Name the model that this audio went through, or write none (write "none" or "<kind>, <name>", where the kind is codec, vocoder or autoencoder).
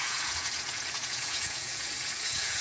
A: vocoder, Vocos